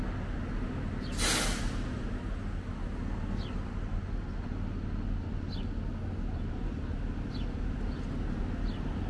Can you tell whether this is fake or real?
real